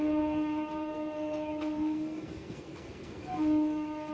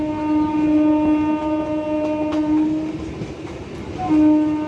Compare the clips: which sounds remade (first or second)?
first